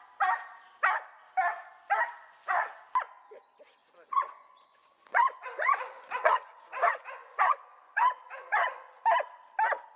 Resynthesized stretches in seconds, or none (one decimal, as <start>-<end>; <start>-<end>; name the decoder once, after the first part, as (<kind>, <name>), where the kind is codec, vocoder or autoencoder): 2.2-2.7 (vocoder, Vocos); 3.8-9.0